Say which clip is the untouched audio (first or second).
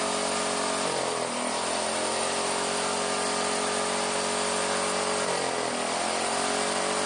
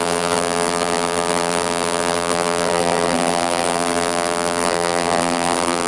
first